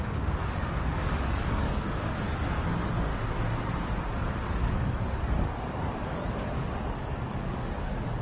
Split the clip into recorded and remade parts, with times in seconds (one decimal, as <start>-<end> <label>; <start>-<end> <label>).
0.0-3.1 remade; 3.1-4.0 recorded; 4.0-8.2 remade